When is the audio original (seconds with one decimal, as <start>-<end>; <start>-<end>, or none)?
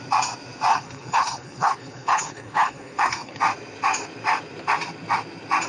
0.0-0.7; 3.4-5.7